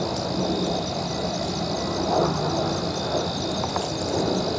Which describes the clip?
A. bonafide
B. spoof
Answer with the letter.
A